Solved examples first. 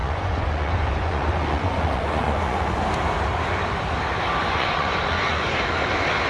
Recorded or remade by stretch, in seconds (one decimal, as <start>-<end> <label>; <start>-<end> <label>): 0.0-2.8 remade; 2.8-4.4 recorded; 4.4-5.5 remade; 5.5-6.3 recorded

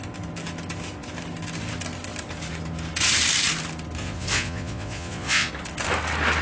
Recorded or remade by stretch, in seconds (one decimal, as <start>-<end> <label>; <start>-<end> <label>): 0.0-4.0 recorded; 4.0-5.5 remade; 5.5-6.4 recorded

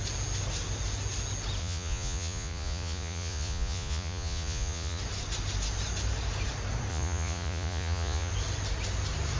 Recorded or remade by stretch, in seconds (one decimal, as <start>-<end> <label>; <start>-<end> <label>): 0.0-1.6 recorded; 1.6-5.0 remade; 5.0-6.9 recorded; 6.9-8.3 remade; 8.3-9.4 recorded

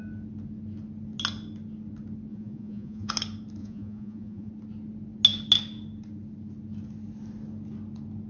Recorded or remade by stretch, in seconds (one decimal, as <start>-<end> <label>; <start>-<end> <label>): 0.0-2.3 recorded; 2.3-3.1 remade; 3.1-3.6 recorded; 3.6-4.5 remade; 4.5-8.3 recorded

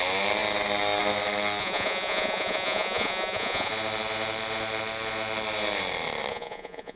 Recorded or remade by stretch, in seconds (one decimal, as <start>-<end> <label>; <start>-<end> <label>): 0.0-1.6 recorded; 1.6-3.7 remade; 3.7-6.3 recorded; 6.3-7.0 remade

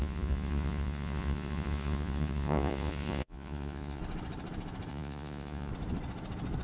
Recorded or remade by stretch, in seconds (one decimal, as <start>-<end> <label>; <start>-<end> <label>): 0.0-4.0 remade; 4.0-4.9 recorded; 4.9-5.7 remade; 5.7-6.6 recorded